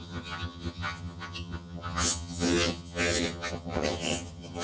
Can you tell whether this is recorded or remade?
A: remade